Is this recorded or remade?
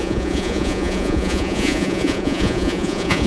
remade